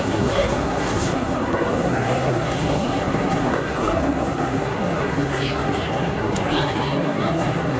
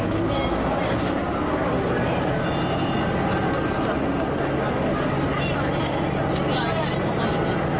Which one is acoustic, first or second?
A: second